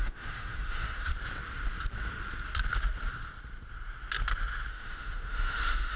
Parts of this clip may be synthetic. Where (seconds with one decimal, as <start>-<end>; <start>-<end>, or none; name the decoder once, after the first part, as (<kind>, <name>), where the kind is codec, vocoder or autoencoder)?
0.0-1.1 (autoencoder, DAC-VAE); 4.7-6.0